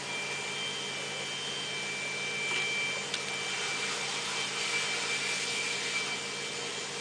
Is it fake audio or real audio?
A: real